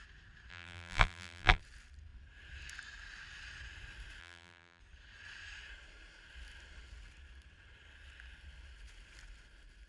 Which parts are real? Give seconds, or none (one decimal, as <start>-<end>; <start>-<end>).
0.0-0.5; 1.6-4.2; 4.8-9.9